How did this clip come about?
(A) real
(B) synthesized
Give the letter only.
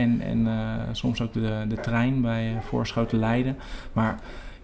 A